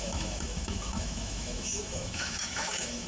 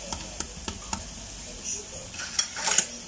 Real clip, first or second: second